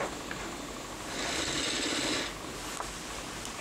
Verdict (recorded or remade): recorded